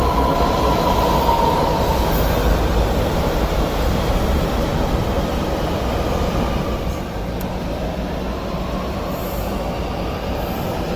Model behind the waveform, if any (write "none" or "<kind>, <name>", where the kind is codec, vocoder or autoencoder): none